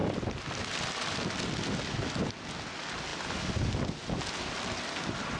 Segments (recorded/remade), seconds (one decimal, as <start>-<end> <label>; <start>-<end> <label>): 0.0-5.4 recorded